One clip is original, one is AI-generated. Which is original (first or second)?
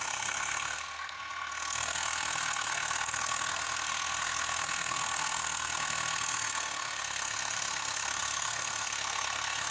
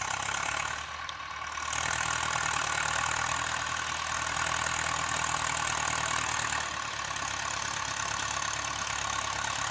second